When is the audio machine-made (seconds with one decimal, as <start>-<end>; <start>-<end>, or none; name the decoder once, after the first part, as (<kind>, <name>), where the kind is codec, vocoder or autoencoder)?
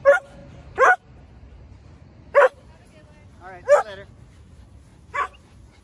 none